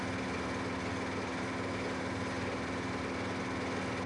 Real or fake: real